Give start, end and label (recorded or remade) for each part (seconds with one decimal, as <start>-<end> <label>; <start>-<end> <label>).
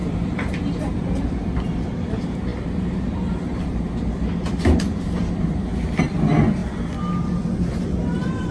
0.0-6.6 remade; 6.6-7.3 recorded; 7.3-8.5 remade